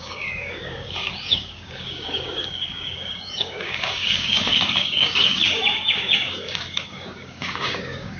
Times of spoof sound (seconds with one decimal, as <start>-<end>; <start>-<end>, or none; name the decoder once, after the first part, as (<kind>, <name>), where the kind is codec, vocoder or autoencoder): 0.0-8.2 (codec, DAC)

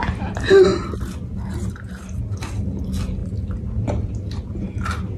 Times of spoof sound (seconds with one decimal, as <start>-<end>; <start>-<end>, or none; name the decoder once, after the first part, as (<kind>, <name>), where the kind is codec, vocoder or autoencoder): none

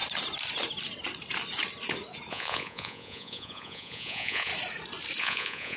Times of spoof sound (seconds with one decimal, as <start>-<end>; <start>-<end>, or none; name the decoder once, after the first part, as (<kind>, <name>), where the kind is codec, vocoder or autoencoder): 2.3-4.5 (vocoder, Vocos); 5.2-5.8

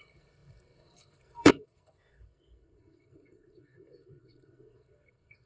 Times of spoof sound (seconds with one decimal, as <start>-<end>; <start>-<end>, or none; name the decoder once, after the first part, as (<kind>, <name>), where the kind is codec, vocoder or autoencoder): 0.0-5.5 (codec, SNAC)

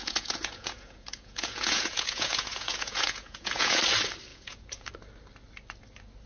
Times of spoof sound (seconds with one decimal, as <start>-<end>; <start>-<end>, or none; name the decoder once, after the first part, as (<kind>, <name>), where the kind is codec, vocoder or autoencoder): 0.0-3.8 (vocoder, Vocos); 4.3-4.9

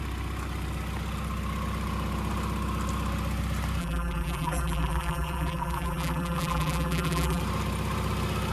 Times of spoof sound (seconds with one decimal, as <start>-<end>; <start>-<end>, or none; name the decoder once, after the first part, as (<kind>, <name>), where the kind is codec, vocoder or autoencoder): 3.8-7.4 (vocoder, BigVGAN v2)